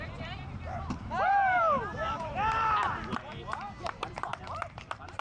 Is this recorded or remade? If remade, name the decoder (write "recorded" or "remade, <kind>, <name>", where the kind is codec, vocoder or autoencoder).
remade, vocoder, BigVGAN v2